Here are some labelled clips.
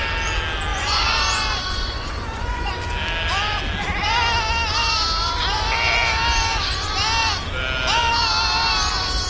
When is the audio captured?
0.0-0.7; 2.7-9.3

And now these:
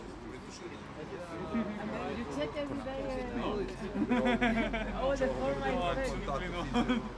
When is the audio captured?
0.0-7.2

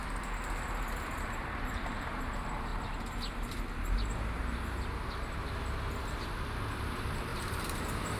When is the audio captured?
0.0-1.1; 2.7-6.8

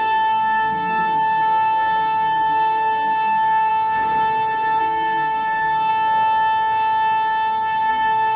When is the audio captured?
3.7-4.8; 5.9-7.9

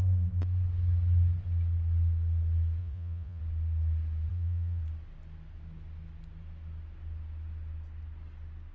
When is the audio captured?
0.0-2.8; 3.4-4.3; 4.8-8.7

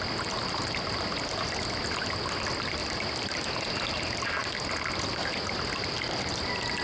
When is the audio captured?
0.0-6.8

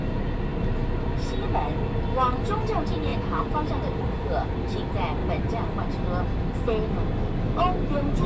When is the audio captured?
0.0-8.3

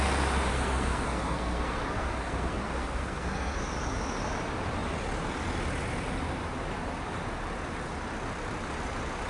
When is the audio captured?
0.0-0.5; 3.6-9.3